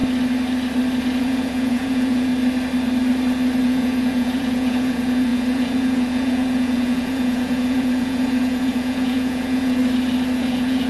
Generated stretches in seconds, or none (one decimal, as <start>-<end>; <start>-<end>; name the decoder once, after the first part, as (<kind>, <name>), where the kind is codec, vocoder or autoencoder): 1.2-2.3 (vocoder, Vocos); 3.6-9.8; 10.4-10.9